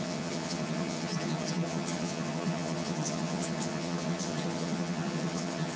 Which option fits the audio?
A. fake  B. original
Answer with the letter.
A